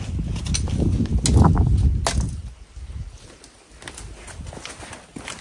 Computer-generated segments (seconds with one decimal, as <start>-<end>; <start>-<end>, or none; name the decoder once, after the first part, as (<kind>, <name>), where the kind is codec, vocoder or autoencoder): none